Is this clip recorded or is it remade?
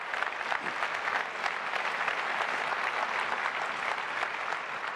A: recorded